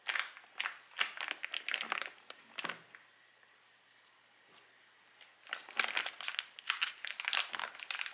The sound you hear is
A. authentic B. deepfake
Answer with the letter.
A